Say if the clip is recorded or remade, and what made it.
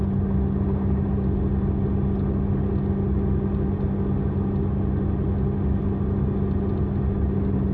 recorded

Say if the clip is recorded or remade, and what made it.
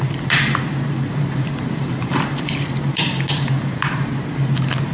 remade, vocoder, BigVGAN v2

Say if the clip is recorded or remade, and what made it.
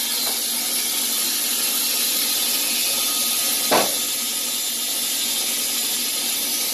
recorded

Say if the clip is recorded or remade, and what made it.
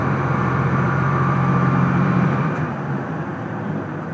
remade, vocoder, BigVGAN v2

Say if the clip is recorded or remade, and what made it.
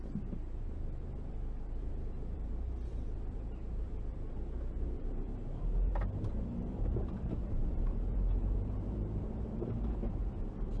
remade, vocoder, BigVGAN v2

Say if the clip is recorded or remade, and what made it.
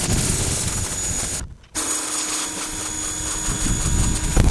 recorded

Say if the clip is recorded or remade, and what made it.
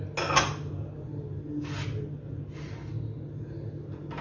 recorded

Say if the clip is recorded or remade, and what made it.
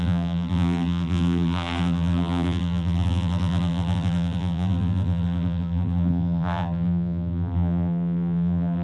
remade, vocoder, BigVGAN v2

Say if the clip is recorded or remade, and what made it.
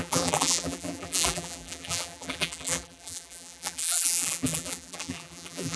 remade, vocoder, BigVGAN v2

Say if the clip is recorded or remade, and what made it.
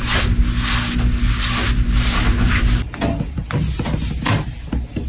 recorded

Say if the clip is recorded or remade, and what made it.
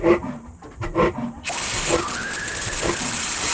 recorded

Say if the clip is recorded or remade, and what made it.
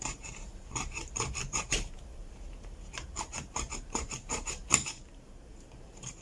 remade, vocoder, BigVGAN v2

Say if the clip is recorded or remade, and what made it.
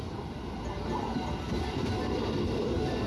recorded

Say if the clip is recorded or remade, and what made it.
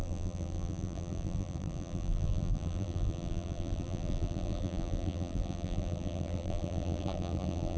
remade, vocoder, BigVGAN v2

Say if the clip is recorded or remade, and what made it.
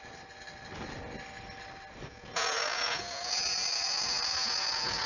recorded